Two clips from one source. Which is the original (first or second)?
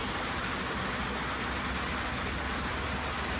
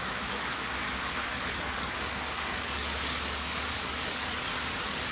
first